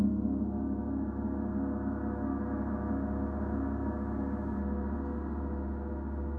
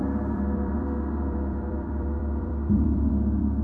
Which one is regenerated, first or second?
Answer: second